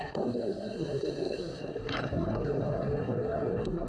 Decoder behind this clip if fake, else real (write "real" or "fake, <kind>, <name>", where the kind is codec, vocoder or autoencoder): fake, codec, SNAC